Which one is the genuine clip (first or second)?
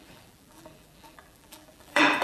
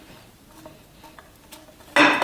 second